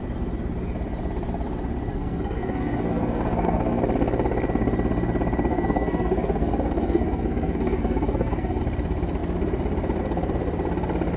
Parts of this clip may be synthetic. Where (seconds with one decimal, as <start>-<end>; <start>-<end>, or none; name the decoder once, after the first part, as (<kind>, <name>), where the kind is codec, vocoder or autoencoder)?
1.9-3.8 (codec, SNAC); 5.5-8.6